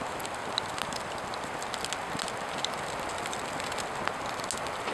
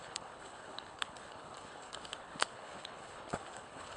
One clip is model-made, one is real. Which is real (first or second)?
first